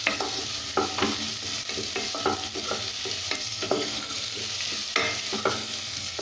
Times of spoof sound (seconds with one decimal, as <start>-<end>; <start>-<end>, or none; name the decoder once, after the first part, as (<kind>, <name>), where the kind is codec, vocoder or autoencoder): 0.0-0.4 (codec, SNAC); 3.4-4.4; 5.5-6.2